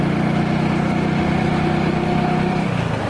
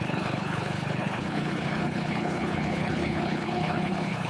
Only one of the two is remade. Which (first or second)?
second